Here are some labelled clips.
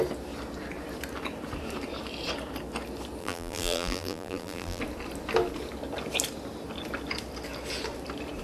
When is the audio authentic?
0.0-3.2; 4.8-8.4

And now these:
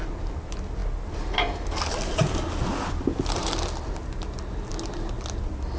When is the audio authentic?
0.0-5.8

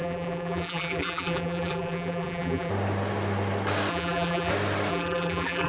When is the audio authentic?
2.7-3.9; 4.5-4.9

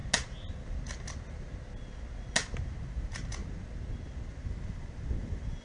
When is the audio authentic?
0.0-2.8; 3.4-4.4

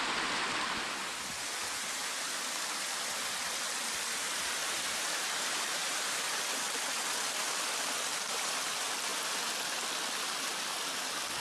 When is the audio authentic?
0.0-1.1; 2.3-4.1; 6.5-11.4

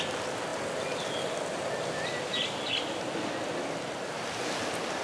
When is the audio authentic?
0.0-5.0

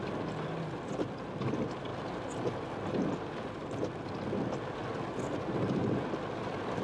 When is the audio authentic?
0.0-6.8

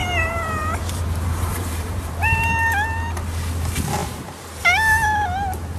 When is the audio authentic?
2.1-4.0; 4.6-5.8